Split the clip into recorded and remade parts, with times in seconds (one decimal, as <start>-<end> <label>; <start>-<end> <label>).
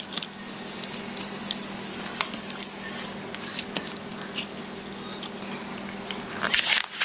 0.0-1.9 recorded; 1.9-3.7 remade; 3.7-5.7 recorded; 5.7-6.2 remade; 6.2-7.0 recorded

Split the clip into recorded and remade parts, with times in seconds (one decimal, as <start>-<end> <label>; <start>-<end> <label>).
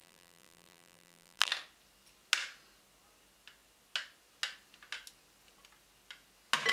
0.0-1.5 remade; 1.5-6.7 recorded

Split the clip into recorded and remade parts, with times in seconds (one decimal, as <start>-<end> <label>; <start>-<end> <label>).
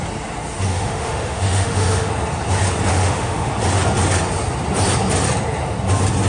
0.0-0.7 recorded; 0.7-2.1 remade; 2.1-2.9 recorded; 2.9-3.5 remade; 3.5-6.3 recorded